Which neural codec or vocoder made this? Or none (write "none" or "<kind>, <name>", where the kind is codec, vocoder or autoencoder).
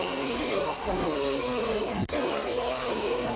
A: codec, SNAC